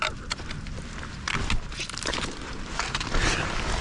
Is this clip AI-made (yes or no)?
no